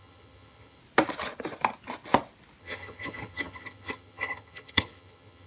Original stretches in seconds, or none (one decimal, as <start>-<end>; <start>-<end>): 0.8-2.6